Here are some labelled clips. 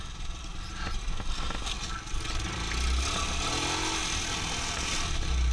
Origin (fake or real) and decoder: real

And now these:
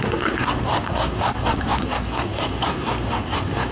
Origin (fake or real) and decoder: fake, codec, SNAC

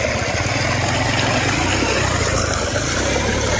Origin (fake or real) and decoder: real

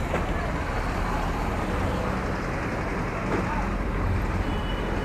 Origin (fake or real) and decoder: real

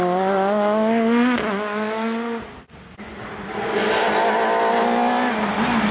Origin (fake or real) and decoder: real